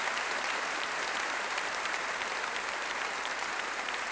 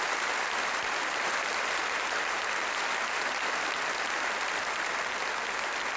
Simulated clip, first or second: first